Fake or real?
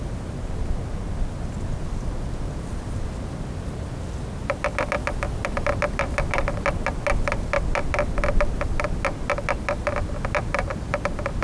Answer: real